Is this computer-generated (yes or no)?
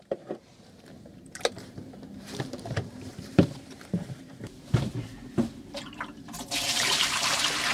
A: yes